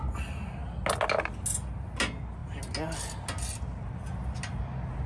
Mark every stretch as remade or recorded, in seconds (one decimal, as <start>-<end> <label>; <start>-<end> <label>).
0.0-5.1 recorded